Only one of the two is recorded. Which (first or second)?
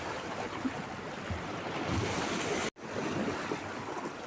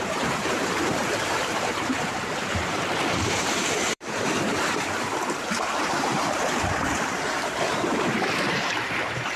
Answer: first